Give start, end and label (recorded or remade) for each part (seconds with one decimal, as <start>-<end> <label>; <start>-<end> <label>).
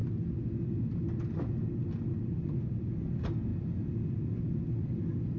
0.0-5.4 recorded